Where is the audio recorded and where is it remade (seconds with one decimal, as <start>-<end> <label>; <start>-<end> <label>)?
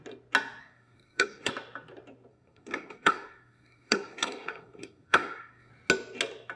0.0-0.6 recorded; 0.6-1.5 remade; 1.5-2.3 recorded; 2.3-5.7 remade; 5.7-6.6 recorded